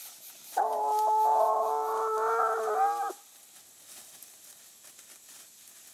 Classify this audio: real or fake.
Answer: real